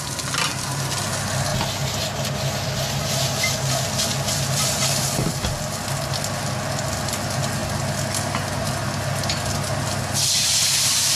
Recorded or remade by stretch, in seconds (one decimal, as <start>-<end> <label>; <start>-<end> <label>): 0.0-11.2 recorded